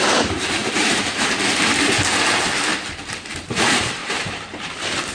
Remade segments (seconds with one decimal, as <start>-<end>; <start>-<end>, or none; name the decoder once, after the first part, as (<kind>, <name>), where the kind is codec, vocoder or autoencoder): 0.0-2.7 (vocoder, BigVGAN v2); 3.3-5.1